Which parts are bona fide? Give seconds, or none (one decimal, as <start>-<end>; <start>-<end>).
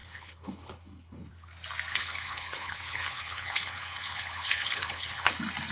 1.3-1.9; 5.3-5.7